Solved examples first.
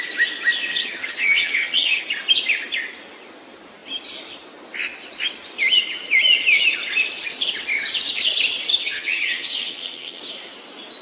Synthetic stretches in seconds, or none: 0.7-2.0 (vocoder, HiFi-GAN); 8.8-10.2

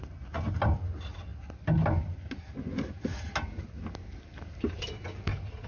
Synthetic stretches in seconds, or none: none

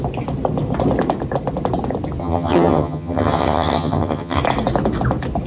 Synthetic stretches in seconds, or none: 2.2-4.4 (vocoder, HiFi-GAN)

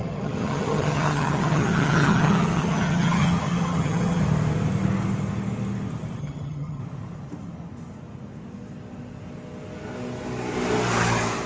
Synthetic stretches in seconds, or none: 0.0-4.2 (vocoder, HiFi-GAN); 6.2-6.8